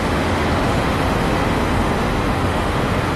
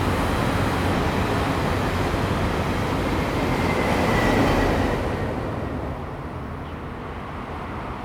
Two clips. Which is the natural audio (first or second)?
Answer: second